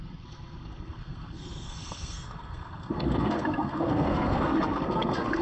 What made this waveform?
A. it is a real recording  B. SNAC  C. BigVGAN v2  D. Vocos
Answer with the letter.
B